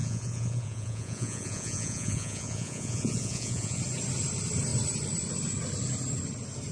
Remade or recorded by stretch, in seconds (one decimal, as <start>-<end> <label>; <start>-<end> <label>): 0.0-3.8 remade; 3.8-6.7 recorded